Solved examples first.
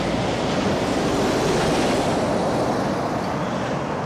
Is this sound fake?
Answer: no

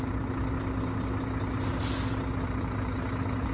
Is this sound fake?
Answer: no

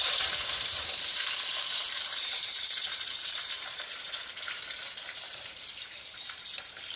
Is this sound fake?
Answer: yes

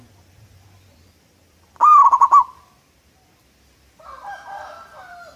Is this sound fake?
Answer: no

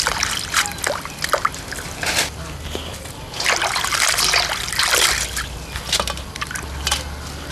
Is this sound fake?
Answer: no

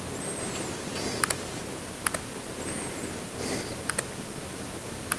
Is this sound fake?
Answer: yes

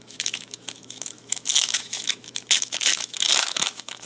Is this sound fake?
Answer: yes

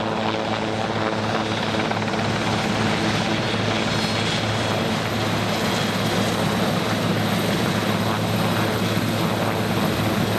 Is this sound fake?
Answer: no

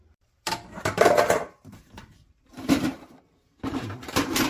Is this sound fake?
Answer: yes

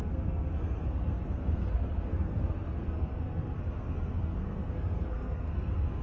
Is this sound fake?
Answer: yes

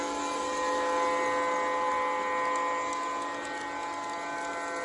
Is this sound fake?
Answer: no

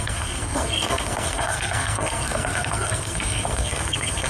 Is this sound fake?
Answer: yes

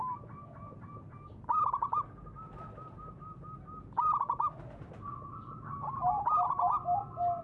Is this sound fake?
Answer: no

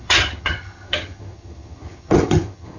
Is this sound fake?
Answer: yes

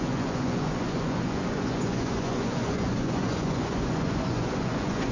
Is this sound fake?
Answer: yes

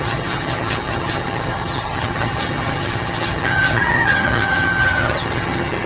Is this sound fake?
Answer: yes